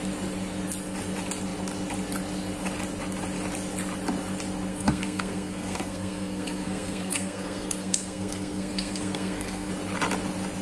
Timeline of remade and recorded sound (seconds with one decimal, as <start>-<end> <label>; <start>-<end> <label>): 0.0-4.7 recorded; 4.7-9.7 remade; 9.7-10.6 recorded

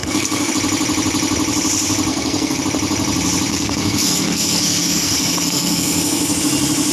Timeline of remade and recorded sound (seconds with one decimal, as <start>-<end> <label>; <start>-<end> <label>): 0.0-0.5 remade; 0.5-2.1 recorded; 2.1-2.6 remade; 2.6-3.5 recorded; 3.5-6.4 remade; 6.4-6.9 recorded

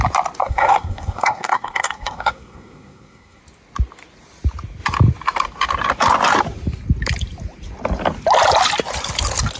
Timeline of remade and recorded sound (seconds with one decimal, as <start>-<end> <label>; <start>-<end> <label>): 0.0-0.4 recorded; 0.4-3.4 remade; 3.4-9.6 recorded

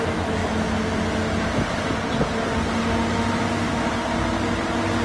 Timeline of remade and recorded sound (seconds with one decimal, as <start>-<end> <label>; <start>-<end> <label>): 0.0-5.0 recorded